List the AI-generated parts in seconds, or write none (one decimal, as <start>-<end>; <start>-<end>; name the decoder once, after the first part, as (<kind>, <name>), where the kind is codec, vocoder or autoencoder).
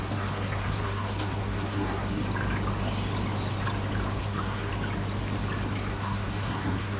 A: 0.0-2.2 (codec, SNAC); 4.2-4.7; 5.9-7.0